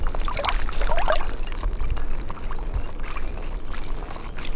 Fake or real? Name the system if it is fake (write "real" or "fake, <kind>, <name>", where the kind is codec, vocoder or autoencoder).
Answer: real